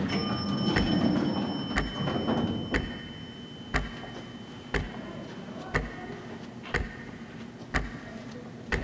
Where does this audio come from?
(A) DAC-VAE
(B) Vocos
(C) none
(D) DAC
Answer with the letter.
C